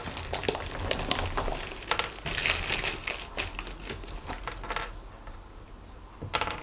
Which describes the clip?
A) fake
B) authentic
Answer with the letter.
B